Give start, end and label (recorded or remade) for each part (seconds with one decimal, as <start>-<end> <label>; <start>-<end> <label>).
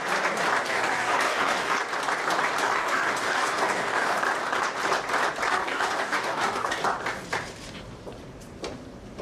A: 0.0-0.7 recorded; 0.7-1.8 remade; 1.8-2.6 recorded; 2.6-4.2 remade; 4.2-5.5 recorded; 5.5-6.7 remade; 6.7-9.2 recorded